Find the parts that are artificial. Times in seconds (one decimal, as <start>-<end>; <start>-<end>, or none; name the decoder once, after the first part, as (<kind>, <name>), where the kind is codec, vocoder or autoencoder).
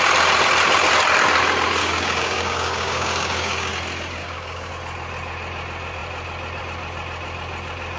1.8-3.7 (codec, DAC); 4.2-4.7